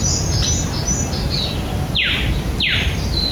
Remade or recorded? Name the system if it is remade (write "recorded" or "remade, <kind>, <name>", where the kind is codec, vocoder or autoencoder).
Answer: recorded